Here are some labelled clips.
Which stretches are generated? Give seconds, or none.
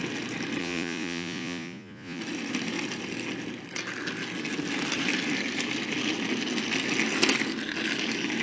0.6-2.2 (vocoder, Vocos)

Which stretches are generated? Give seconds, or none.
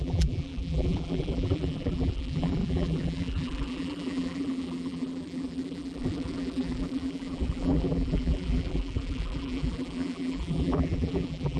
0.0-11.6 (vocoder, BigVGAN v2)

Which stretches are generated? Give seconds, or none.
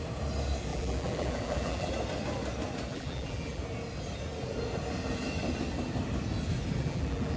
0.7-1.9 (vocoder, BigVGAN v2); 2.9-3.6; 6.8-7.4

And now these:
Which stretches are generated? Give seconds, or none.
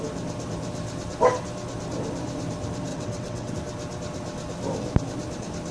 2.9-3.5 (vocoder, WaveNeXt)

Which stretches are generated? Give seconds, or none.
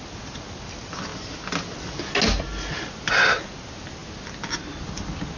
none